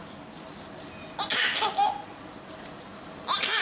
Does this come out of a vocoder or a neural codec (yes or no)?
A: no